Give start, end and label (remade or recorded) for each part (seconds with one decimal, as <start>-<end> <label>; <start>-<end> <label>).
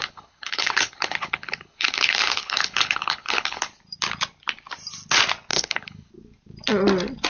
0.0-3.6 remade; 3.6-5.5 recorded; 5.5-6.1 remade; 6.1-7.3 recorded